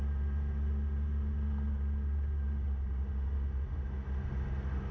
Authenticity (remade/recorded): recorded